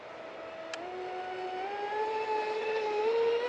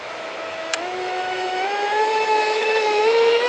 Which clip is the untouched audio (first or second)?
first